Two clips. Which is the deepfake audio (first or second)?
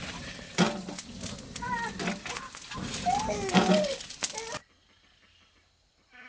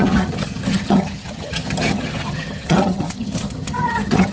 second